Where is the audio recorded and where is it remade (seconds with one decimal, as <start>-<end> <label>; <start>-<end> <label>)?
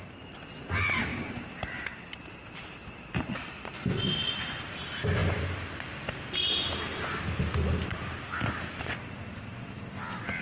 0.0-1.1 recorded; 1.1-2.3 remade; 2.3-10.4 recorded